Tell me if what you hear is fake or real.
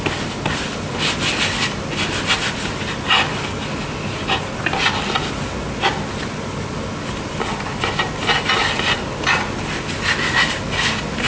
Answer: real